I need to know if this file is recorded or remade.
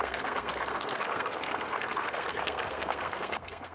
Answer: remade